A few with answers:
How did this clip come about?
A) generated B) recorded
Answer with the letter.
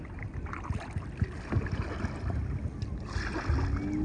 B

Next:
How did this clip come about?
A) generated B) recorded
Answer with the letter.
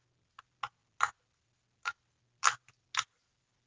B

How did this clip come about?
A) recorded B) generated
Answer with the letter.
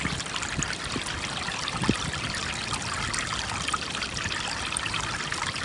A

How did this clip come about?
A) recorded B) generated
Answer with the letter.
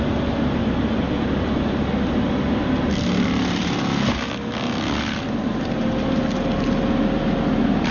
A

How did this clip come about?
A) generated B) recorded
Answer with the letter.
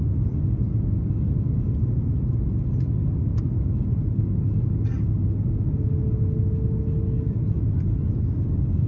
B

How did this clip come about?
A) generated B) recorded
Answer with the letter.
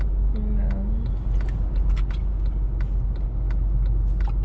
B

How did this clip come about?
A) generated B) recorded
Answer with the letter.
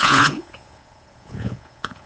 A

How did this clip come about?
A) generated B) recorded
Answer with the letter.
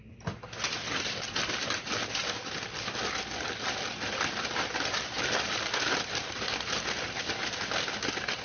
B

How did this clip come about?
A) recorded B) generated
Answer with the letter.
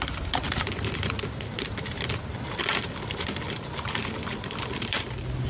B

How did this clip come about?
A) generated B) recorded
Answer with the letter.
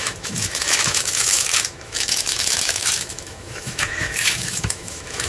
A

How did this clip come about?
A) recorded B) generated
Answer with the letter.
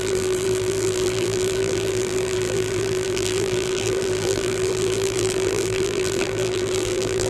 B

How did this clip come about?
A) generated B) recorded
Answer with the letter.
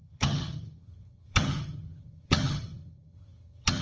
A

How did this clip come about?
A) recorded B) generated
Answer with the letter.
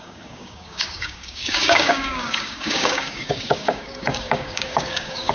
B